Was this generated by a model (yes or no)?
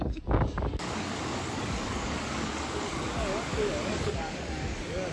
yes